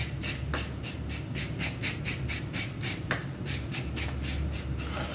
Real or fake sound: real